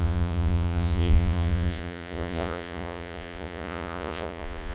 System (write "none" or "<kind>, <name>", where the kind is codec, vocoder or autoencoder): vocoder, Vocos